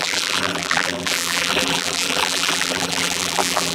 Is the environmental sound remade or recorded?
remade